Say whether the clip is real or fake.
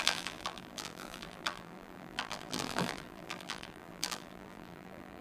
fake